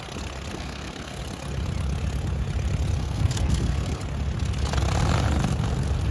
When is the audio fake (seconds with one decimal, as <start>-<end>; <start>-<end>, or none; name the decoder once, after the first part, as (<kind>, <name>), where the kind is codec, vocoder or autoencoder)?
0.5-1.2 (codec, SNAC); 3.0-4.0